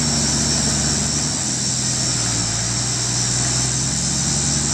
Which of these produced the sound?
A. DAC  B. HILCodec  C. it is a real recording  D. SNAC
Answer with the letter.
C